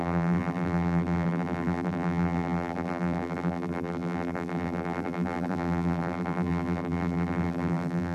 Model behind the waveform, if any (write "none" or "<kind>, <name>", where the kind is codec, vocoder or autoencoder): vocoder, BigVGAN v2